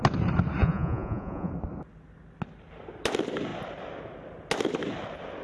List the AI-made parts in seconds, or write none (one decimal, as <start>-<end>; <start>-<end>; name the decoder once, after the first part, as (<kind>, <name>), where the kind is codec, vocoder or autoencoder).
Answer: 0.6-1.5 (vocoder, Vocos)